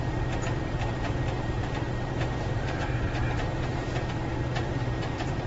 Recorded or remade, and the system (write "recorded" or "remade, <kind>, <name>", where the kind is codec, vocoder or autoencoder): remade, vocoder, BigVGAN v2